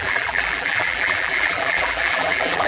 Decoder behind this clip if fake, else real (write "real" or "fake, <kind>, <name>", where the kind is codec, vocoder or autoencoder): fake, vocoder, BigVGAN v2